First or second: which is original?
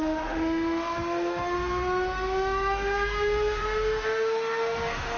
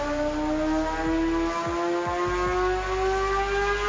second